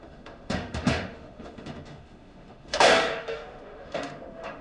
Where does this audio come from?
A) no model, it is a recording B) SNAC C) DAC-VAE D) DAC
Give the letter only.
C